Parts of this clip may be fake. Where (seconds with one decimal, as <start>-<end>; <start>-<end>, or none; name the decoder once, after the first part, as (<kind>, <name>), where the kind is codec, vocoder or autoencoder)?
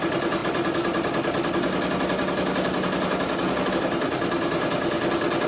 none